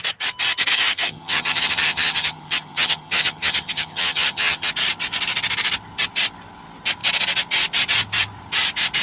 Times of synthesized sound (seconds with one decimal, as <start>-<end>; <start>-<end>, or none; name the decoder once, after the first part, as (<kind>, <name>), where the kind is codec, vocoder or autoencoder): 0.7-4.7 (vocoder, HiFi-GAN)